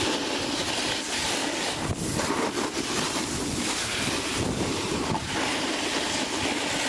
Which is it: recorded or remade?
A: recorded